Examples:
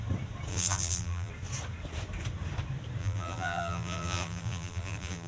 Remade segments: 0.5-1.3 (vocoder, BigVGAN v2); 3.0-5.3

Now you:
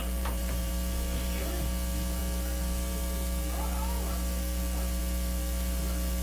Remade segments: 0.0-0.7 (vocoder, BigVGAN v2)

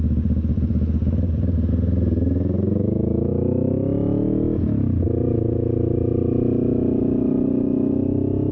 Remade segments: none

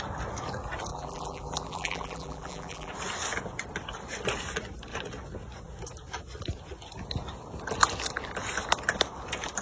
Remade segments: 0.9-2.9 (vocoder, BigVGAN v2)